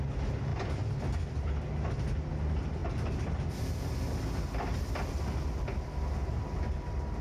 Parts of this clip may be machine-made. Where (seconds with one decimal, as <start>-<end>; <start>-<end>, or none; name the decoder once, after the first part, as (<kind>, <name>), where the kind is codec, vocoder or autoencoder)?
none